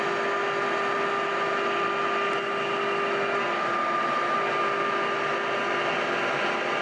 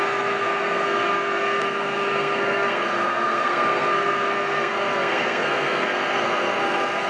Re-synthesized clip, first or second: second